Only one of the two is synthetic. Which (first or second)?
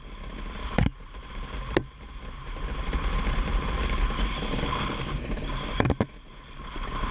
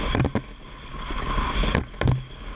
first